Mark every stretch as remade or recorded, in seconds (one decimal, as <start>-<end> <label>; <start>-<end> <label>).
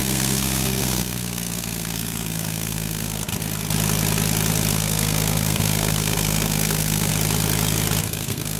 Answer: 0.0-3.3 remade; 3.3-4.7 recorded; 4.7-7.1 remade; 7.1-8.0 recorded; 8.0-8.6 remade